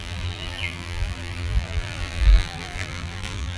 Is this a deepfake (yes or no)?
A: yes